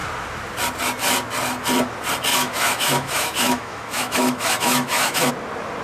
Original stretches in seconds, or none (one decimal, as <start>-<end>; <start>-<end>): 0.0-2.3; 5.3-5.8